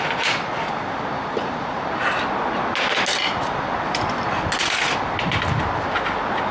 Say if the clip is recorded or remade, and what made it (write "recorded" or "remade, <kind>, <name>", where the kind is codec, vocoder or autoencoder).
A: recorded